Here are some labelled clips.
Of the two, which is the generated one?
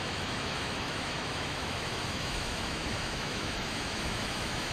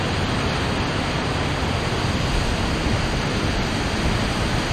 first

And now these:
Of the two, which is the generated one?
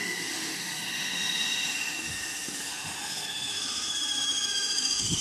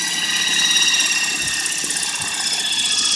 first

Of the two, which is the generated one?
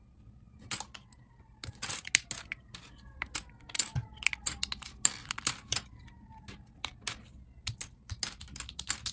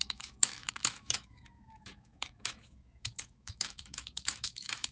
second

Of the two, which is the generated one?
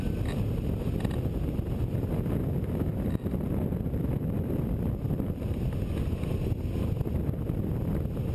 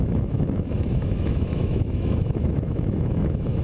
second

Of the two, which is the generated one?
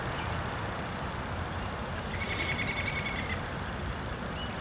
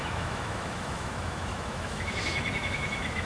second